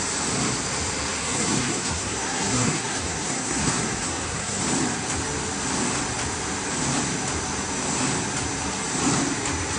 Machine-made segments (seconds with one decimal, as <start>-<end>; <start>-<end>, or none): 1.2-4.6